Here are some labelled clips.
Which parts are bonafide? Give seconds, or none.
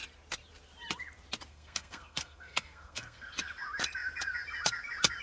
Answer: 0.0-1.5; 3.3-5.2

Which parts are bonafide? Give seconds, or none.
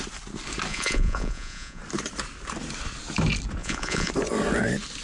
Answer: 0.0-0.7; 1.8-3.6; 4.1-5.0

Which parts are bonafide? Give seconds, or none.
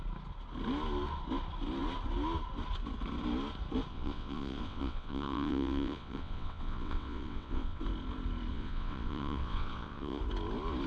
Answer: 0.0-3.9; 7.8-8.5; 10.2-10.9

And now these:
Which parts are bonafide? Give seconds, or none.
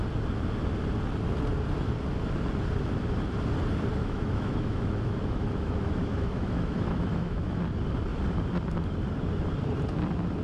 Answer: 0.0-4.0; 7.6-10.4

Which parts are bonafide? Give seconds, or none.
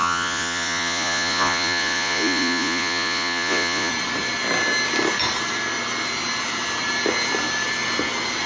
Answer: 3.9-8.5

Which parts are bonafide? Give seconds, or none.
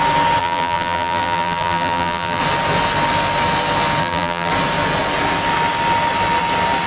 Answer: 0.0-0.4; 2.4-4.0; 4.5-6.9